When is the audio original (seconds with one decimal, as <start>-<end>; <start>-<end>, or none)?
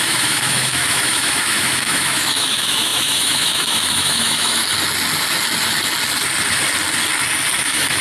4.6-7.6